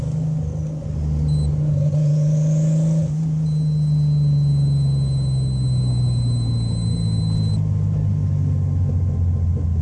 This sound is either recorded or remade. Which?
recorded